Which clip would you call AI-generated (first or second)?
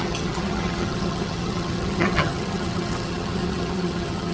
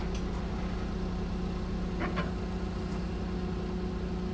first